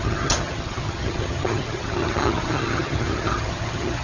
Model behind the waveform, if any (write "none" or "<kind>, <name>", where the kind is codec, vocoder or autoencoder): vocoder, HiFi-GAN